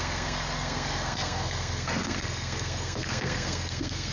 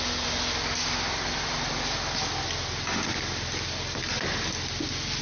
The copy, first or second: first